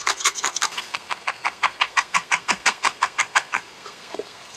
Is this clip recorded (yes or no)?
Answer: no